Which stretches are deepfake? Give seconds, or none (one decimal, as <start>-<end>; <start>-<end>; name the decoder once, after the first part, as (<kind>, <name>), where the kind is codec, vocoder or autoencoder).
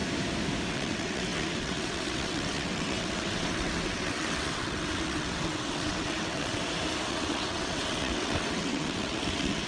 0.7-6.6 (vocoder, WaveNeXt); 7.1-9.7